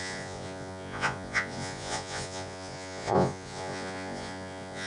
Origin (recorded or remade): remade